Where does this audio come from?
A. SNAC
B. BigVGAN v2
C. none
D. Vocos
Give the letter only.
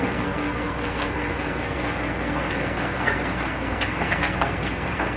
A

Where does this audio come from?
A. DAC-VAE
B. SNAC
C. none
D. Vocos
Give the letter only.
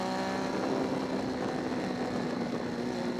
C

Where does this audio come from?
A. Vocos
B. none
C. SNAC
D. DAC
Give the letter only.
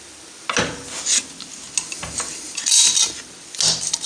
B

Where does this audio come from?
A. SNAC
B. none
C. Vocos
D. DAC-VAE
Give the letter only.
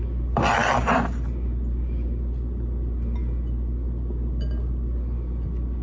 B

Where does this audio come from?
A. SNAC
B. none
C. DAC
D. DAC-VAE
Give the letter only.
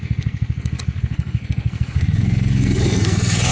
A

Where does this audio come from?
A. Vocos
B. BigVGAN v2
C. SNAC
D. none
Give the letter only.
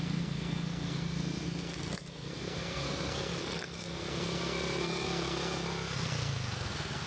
C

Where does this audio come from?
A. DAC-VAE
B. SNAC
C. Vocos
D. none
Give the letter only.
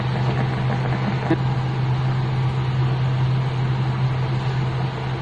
D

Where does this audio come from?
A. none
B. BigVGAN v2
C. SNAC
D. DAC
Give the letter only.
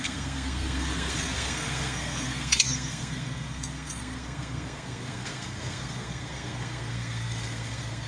C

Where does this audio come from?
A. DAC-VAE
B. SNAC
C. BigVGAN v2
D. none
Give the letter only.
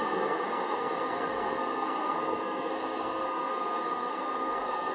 B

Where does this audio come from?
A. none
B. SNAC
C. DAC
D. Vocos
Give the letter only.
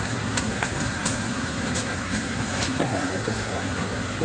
B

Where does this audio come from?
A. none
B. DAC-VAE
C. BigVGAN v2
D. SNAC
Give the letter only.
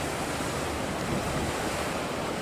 A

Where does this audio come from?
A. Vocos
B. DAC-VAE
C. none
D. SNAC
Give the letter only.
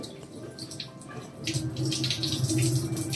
C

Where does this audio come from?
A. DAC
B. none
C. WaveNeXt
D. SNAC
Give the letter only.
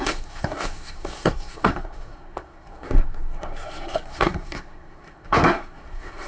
D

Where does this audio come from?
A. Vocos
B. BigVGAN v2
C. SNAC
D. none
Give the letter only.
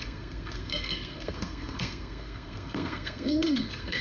C